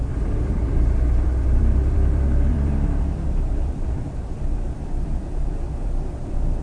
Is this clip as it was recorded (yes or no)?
no